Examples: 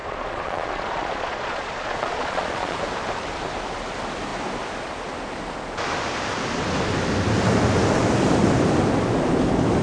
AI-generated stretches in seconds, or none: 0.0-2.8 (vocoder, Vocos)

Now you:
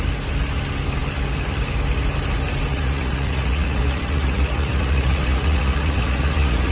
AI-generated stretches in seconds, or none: 2.7-6.7 (vocoder, Vocos)

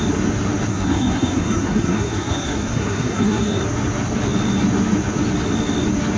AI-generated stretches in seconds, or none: 0.7-3.6 (codec, SNAC)

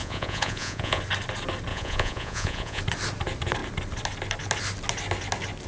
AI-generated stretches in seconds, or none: 0.0-1.0 (vocoder, Vocos); 1.7-2.8

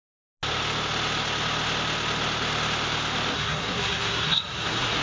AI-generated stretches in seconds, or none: 3.3-5.0 (codec, SNAC)